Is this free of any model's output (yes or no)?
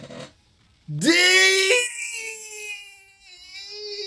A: yes